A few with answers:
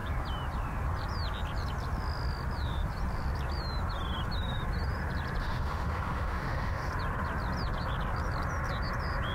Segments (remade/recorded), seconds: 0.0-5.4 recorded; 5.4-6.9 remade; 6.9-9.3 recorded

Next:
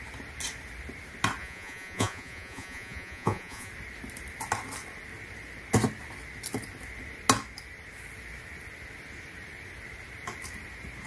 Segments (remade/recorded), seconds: 0.0-1.4 recorded; 1.4-3.7 remade; 3.7-11.1 recorded

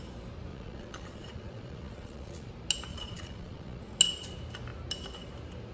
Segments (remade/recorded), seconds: 0.0-0.5 recorded; 0.5-2.5 remade; 2.5-2.9 recorded; 2.9-3.8 remade; 3.8-5.7 recorded